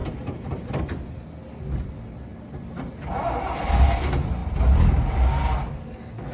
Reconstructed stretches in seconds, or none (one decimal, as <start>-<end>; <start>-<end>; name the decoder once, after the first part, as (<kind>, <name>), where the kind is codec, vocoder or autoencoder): none